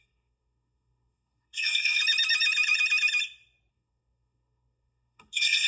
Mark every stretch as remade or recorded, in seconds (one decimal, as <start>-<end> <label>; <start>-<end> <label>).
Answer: 0.0-2.0 remade; 2.0-3.7 recorded; 3.7-5.7 remade